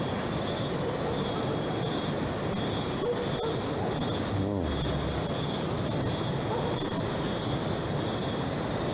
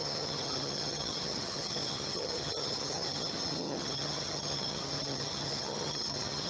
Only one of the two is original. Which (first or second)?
first